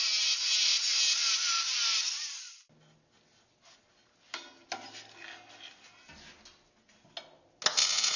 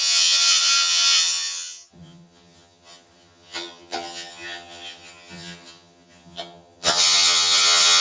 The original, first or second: first